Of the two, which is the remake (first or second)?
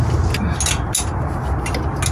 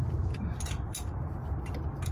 second